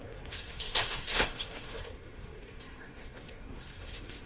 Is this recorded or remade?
remade